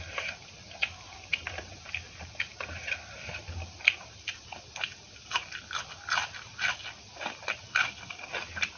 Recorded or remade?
recorded